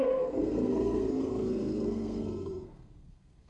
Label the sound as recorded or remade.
remade